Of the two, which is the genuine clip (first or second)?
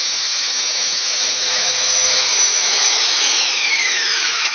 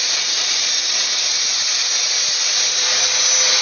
second